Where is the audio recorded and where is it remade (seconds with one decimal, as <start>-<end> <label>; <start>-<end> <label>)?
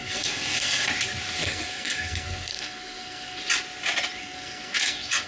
0.0-0.9 remade; 0.9-1.4 recorded; 1.4-3.4 remade; 3.4-4.2 recorded; 4.2-5.3 remade